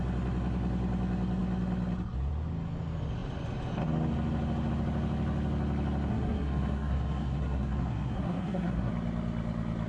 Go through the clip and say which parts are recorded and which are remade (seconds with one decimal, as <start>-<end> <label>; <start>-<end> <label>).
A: 0.0-6.1 recorded; 6.1-8.9 remade; 8.9-9.9 recorded